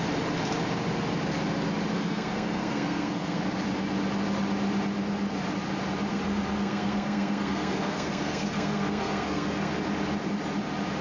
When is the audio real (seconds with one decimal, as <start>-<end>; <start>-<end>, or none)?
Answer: 0.0-1.9; 3.4-6.1; 9.7-11.0

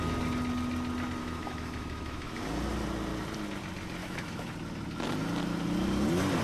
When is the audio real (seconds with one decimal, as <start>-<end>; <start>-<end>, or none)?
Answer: 0.0-1.2; 2.4-4.0; 4.5-6.4